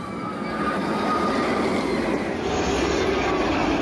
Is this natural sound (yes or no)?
yes